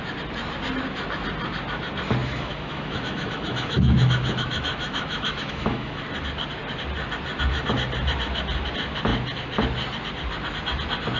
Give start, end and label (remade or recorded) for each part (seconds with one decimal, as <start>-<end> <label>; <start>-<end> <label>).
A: 0.0-2.2 recorded; 2.2-6.0 remade; 6.0-11.2 recorded